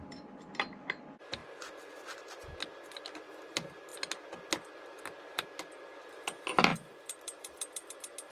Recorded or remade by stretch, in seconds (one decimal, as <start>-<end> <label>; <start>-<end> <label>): 0.0-6.7 recorded; 6.7-8.3 remade

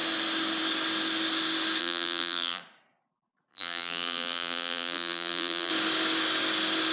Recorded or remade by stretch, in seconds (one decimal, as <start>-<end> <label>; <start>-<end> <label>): 0.0-1.8 recorded; 1.8-2.6 remade; 2.6-3.5 recorded; 3.5-5.7 remade; 5.7-6.9 recorded

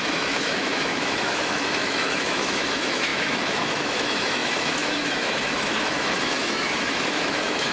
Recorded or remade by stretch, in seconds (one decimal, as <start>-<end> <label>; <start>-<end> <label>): 0.0-7.7 remade